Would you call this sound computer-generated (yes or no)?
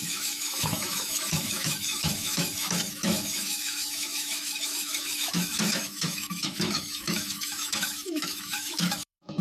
yes